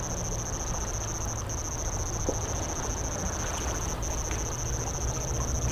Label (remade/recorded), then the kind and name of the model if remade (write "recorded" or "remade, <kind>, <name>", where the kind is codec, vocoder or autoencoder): recorded